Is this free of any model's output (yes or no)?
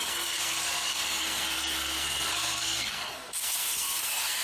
no